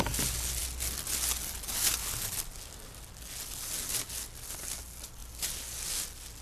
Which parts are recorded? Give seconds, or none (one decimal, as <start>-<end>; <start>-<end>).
0.0-6.4

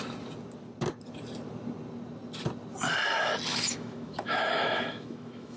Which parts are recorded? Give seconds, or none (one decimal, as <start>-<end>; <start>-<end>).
0.0-3.5

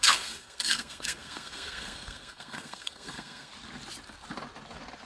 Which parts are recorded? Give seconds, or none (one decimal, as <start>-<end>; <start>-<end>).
3.5-5.1

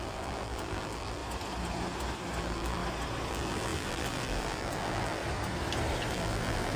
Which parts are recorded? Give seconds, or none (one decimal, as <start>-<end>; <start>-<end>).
1.2-2.4; 2.8-3.3; 5.2-6.1